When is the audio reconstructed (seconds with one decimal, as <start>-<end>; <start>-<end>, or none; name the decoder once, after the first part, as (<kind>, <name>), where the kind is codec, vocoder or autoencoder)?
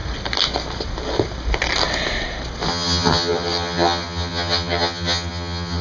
2.7-5.8 (vocoder, HiFi-GAN)